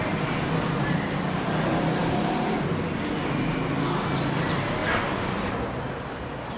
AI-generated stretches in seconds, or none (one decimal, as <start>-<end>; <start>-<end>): none